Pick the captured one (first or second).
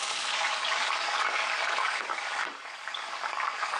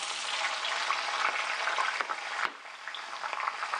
second